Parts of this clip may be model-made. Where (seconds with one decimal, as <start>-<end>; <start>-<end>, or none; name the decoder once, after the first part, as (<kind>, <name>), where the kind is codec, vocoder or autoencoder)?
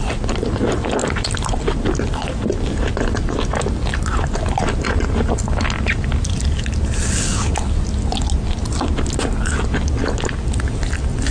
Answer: none